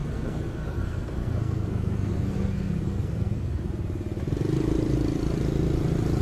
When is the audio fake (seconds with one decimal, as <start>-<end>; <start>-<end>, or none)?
0.0-3.7